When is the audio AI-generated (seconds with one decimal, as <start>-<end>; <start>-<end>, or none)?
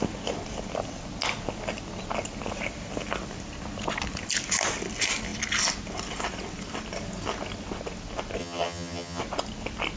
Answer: 8.4-9.2